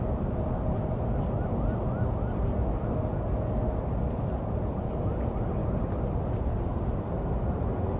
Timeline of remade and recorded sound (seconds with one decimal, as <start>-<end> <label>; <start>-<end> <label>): 0.0-8.0 recorded